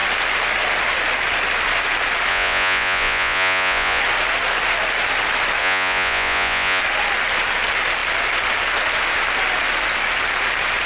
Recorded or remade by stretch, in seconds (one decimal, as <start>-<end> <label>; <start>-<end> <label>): 0.0-2.3 recorded; 2.3-4.0 remade; 4.0-5.6 recorded; 5.6-6.8 remade; 6.8-10.9 recorded